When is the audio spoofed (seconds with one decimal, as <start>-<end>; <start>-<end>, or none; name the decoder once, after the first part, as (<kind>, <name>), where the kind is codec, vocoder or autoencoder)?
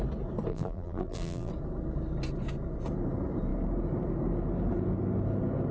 0.5-1.5 (vocoder, BigVGAN v2)